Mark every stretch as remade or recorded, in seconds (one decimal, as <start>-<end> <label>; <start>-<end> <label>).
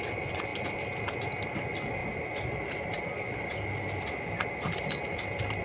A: 0.0-5.6 recorded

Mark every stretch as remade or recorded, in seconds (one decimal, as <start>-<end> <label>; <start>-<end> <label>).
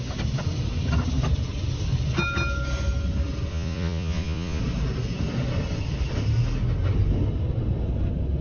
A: 0.0-3.5 recorded; 3.5-4.6 remade; 4.6-8.4 recorded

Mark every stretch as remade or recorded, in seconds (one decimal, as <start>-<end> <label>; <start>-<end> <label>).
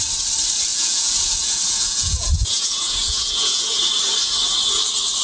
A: 0.0-0.7 recorded; 0.7-3.8 remade; 3.8-5.2 recorded